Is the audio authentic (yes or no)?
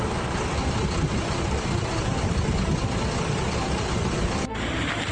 no